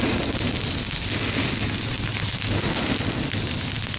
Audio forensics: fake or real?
real